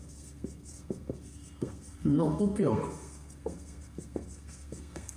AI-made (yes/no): yes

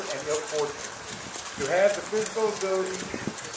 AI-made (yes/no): no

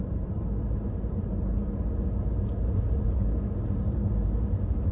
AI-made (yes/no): no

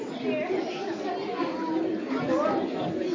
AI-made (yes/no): no